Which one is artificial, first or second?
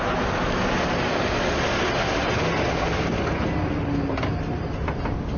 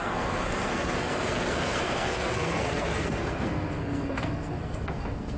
second